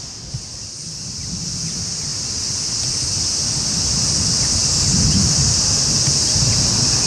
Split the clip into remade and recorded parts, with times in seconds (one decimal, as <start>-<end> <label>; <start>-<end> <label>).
0.0-7.1 recorded